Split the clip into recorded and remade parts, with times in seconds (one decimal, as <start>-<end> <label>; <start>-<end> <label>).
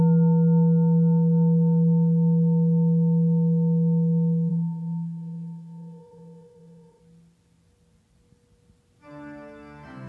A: 0.0-4.5 recorded; 4.5-7.0 remade; 7.0-10.1 recorded